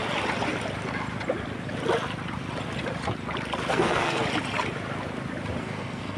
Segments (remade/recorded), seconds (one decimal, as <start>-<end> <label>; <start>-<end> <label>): 0.0-3.7 recorded; 3.7-4.2 remade; 4.2-5.6 recorded; 5.6-6.2 remade